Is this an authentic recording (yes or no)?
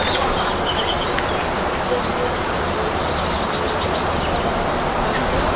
yes